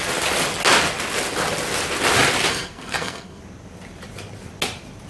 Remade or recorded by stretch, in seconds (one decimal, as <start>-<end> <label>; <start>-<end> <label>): 0.0-2.5 recorded; 2.5-3.4 remade; 3.4-5.1 recorded